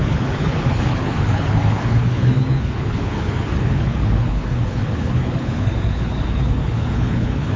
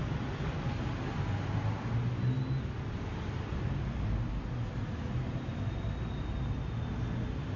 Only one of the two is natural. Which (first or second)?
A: second